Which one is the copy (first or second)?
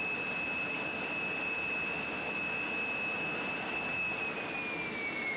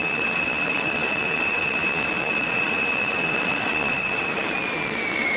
second